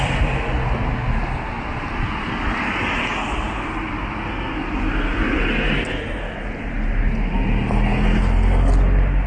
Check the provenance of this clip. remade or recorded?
recorded